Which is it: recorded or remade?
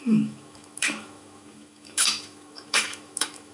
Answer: remade